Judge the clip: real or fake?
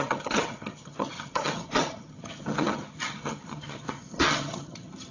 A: fake